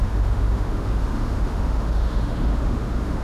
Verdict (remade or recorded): remade